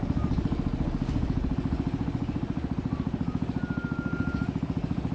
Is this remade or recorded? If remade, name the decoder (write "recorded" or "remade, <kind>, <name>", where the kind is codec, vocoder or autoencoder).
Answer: recorded